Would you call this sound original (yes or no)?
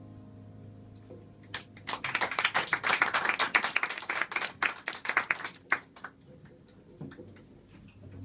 yes